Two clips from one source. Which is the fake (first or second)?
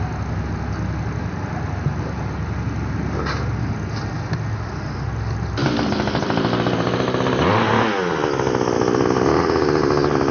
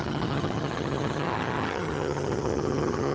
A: second